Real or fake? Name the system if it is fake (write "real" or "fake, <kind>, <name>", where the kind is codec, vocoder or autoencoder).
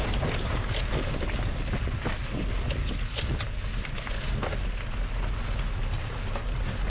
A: real